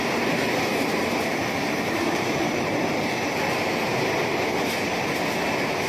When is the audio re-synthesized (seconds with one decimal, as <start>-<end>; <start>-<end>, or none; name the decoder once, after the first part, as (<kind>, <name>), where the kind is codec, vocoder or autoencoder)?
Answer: 0.7-3.0 (vocoder, BigVGAN v2)